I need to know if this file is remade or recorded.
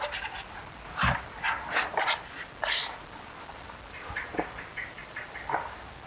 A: recorded